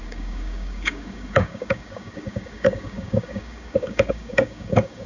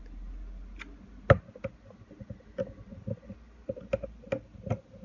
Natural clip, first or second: second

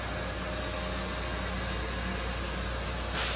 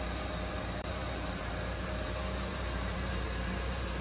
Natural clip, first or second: first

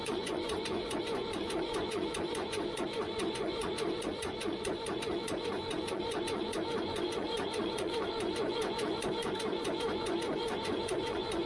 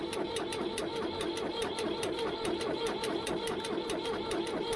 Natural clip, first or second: second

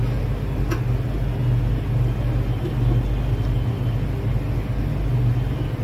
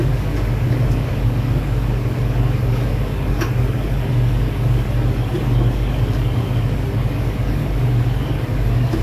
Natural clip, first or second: first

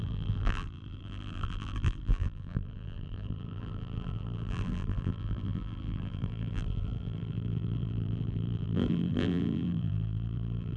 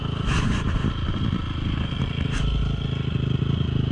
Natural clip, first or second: second